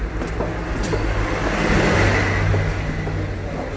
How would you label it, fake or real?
real